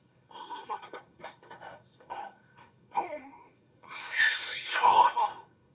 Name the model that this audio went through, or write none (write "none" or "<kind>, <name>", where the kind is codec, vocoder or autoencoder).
codec, SNAC